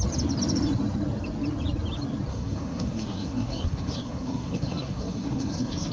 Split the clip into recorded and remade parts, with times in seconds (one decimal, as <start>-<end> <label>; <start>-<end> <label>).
0.0-2.3 recorded; 2.3-5.9 remade